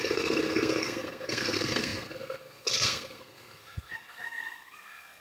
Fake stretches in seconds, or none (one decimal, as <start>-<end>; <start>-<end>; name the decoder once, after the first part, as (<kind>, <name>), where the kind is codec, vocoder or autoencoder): 0.0-5.2 (codec, SNAC)